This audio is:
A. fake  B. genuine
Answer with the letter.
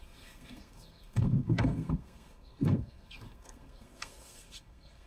A